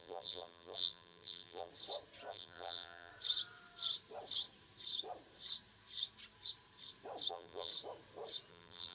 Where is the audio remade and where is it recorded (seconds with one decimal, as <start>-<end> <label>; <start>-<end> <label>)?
0.0-1.7 remade; 1.7-2.3 recorded; 2.3-3.1 remade; 3.1-7.3 recorded; 7.3-7.7 remade; 7.7-8.5 recorded; 8.5-8.9 remade

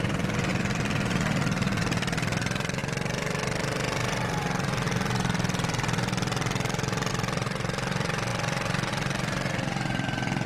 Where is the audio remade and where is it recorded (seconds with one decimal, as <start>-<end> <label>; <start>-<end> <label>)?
0.0-2.8 remade; 2.8-7.1 recorded; 7.1-8.3 remade; 8.3-8.9 recorded; 8.9-10.5 remade

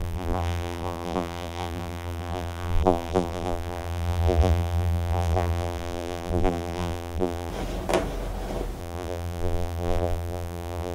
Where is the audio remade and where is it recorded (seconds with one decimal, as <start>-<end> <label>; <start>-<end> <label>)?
0.0-7.5 remade; 7.5-8.8 recorded; 8.8-10.9 remade

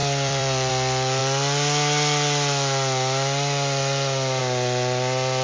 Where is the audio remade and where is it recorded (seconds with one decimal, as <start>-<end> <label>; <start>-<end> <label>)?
0.0-0.7 remade; 0.7-5.4 recorded

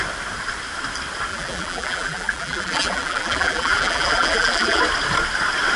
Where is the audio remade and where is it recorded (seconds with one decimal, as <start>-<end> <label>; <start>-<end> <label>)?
0.0-1.3 recorded; 1.3-4.8 remade; 4.8-5.8 recorded

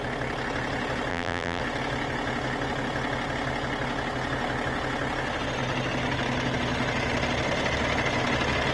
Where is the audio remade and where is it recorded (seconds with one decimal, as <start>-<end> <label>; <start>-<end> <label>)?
0.0-1.1 recorded; 1.1-1.6 remade; 1.6-8.7 recorded

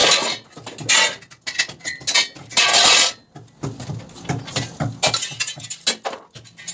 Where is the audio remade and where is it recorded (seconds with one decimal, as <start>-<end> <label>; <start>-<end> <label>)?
0.0-6.7 recorded